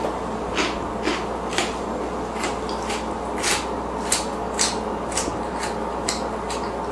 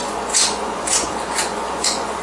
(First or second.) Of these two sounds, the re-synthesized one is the second